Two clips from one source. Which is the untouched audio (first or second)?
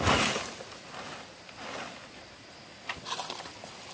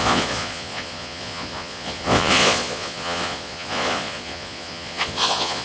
first